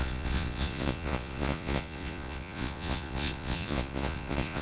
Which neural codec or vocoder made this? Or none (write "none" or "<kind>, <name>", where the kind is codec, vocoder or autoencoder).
vocoder, Vocos